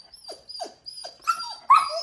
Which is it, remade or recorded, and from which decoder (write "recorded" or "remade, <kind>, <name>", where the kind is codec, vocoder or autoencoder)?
recorded